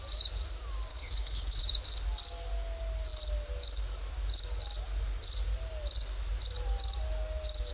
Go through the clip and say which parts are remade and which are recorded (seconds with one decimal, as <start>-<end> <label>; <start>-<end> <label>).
0.0-0.9 recorded; 0.9-1.6 remade; 1.6-7.7 recorded

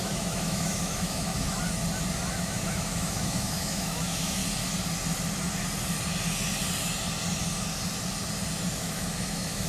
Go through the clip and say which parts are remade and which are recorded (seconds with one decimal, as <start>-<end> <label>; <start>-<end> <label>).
0.0-1.3 remade; 1.3-2.3 recorded; 2.3-4.4 remade; 4.4-8.8 recorded; 8.8-9.7 remade